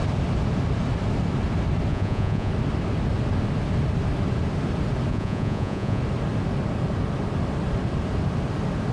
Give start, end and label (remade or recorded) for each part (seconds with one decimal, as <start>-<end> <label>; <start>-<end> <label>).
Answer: 0.0-1.9 recorded; 1.9-2.5 remade; 2.5-5.1 recorded; 5.1-6.0 remade; 6.0-8.9 recorded